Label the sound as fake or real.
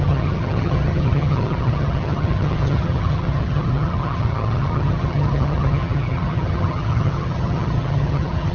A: fake